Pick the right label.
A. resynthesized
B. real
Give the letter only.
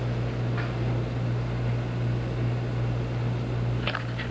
B